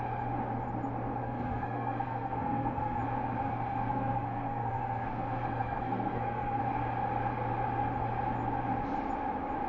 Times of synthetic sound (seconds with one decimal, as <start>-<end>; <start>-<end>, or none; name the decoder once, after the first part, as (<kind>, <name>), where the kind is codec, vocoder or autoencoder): 1.2-3.0 (codec, SNAC); 3.4-6.6